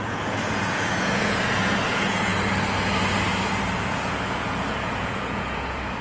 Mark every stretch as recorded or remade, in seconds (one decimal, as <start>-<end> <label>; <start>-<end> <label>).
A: 0.0-2.3 remade; 2.3-3.9 recorded; 3.9-6.0 remade